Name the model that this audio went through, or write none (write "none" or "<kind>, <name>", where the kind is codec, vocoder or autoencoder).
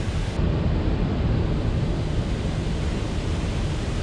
none